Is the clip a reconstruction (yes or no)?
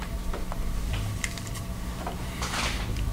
yes